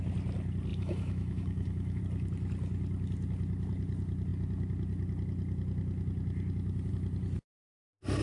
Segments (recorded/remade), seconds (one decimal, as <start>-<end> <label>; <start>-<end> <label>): 0.0-0.7 recorded; 0.7-2.0 remade; 2.0-8.2 recorded